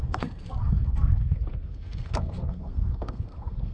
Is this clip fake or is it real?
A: fake